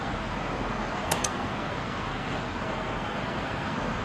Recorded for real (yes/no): no